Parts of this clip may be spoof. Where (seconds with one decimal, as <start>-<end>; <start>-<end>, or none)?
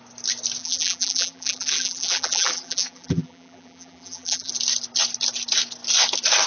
0.6-4.5